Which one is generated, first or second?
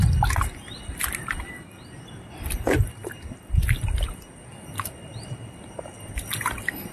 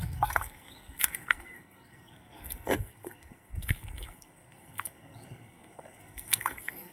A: second